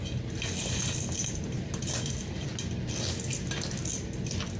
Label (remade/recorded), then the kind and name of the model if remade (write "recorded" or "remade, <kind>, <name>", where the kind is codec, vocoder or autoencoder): recorded